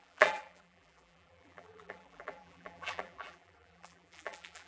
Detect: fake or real fake